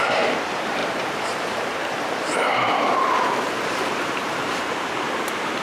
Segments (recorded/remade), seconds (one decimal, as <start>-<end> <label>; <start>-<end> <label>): 0.0-5.6 remade